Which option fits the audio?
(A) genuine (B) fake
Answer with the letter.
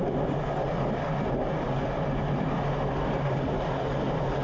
A